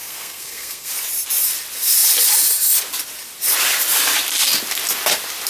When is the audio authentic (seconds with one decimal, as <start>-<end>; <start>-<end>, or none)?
0.9-5.5